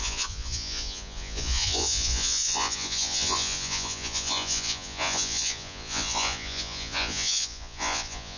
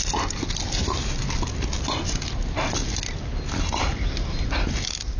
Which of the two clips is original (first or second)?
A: second